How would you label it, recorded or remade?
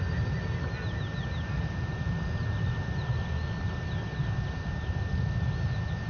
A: recorded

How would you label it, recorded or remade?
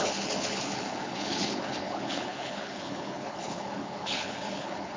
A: remade